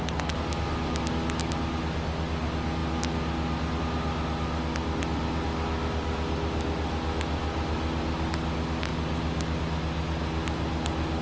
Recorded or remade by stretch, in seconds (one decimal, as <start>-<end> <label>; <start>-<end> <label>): 0.0-11.2 recorded